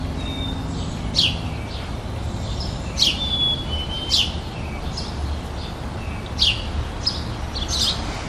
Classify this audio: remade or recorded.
recorded